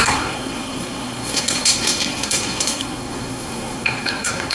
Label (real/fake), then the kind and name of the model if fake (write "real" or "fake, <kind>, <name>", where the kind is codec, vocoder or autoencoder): fake, codec, SNAC